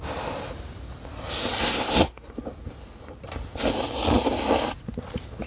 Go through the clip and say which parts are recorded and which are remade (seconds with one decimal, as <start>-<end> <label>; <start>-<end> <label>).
0.0-1.6 recorded; 1.6-2.3 remade; 2.3-5.5 recorded